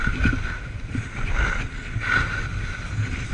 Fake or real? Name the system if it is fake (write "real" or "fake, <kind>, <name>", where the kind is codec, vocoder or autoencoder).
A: real